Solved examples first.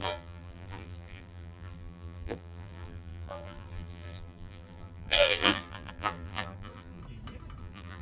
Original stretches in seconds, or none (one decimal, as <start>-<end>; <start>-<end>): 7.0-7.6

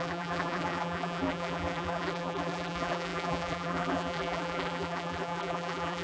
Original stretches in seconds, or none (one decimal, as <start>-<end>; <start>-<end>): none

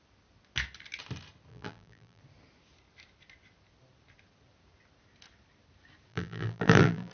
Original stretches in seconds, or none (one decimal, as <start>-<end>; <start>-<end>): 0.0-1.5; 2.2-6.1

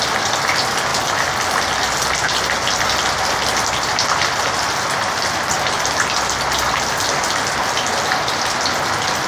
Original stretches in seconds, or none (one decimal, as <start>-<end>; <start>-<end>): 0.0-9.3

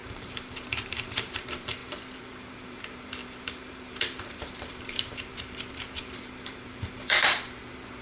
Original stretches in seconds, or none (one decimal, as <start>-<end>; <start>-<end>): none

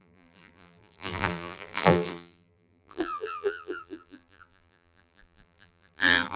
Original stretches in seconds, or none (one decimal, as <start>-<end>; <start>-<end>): none

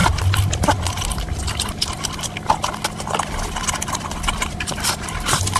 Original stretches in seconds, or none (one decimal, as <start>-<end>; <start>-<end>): 0.0-5.6